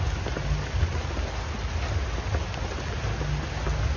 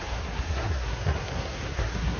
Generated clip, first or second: second